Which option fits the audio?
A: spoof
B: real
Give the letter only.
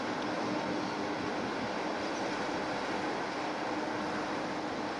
B